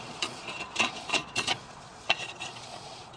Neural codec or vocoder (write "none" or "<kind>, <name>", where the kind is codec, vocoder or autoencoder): vocoder, Vocos